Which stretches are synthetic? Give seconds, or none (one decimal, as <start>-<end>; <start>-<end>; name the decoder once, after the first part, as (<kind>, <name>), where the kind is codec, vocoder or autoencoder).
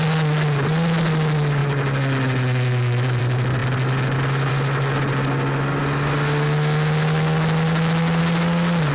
none